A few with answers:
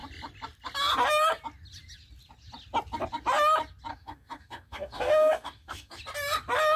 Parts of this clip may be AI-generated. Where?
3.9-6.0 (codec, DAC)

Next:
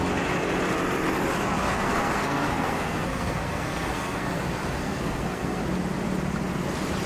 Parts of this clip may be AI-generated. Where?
1.6-5.6 (codec, SNAC)

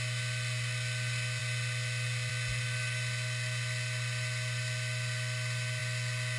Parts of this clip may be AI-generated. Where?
none

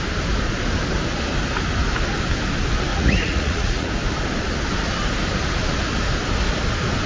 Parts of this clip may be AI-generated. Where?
2.9-3.9 (vocoder, Vocos)

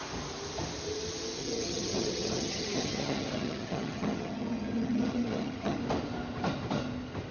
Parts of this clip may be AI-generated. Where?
1.4-5.8 (vocoder, HiFi-GAN)

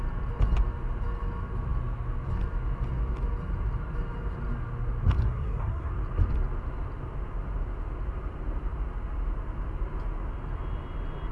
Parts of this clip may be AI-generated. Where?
5.2-5.9 (codec, SNAC)

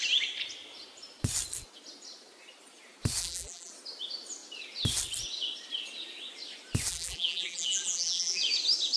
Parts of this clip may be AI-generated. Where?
3.2-3.7 (vocoder, BigVGAN v2); 6.9-8.4

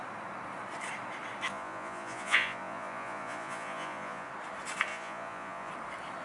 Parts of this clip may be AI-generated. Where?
1.5-4.3 (vocoder, Vocos); 4.9-5.7